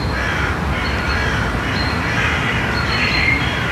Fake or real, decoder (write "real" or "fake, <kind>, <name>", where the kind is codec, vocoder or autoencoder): real